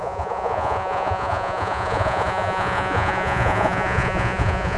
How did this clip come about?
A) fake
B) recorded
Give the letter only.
A